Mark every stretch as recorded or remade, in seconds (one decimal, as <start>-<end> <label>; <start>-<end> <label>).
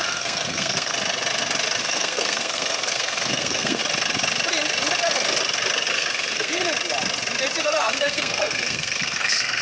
0.0-0.9 remade; 0.9-1.8 recorded; 1.8-3.8 remade; 3.8-5.9 recorded; 5.9-6.6 remade; 6.6-7.6 recorded; 7.6-9.6 remade